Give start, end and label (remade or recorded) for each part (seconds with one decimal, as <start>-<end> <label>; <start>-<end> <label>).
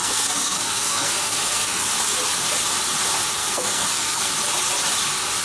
0.0-1.9 remade; 1.9-3.4 recorded; 3.4-4.3 remade; 4.3-5.4 recorded